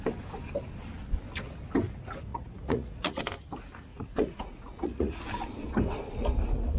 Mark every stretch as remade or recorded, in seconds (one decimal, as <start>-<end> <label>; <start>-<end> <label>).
0.0-2.3 recorded; 2.3-3.2 remade; 3.2-3.9 recorded; 3.9-5.2 remade; 5.2-6.8 recorded